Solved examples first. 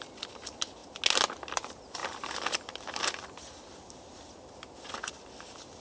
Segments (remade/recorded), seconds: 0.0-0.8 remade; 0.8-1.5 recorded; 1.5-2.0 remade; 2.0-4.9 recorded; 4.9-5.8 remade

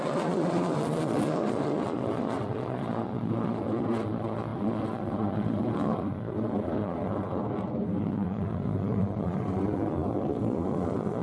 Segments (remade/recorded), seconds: 0.0-7.4 remade; 7.4-8.0 recorded; 8.0-11.2 remade

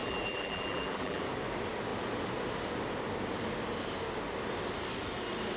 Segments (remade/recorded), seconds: 0.0-1.2 remade; 1.2-5.6 recorded

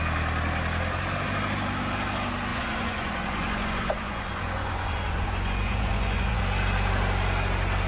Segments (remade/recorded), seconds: 0.0-2.5 recorded; 2.5-6.4 remade; 6.4-7.9 recorded

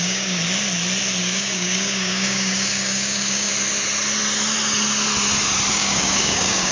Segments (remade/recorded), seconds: 0.0-0.4 remade; 0.4-1.2 recorded; 1.2-3.5 remade; 3.5-5.7 recorded; 5.7-6.7 remade

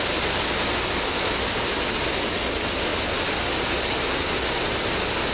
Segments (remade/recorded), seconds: 0.0-5.3 recorded

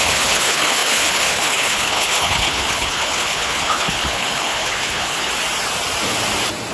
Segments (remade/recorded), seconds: 0.0-5.3 remade; 5.3-6.7 recorded

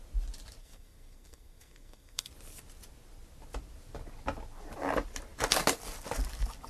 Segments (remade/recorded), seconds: 0.0-0.6 recorded; 0.6-2.3 remade; 2.3-6.7 recorded